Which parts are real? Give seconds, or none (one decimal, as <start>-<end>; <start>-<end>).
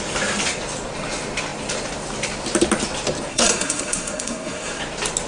0.0-3.3; 4.8-5.3